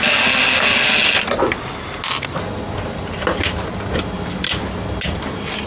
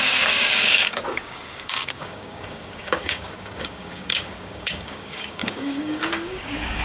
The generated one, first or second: second